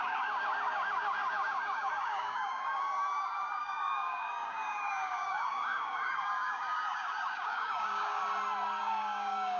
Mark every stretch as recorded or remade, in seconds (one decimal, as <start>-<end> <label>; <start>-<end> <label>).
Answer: 0.0-8.2 remade; 8.2-8.8 recorded; 8.8-9.6 remade